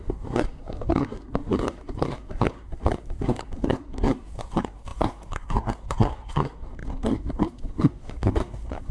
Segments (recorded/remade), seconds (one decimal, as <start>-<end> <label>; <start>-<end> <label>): 0.0-8.9 remade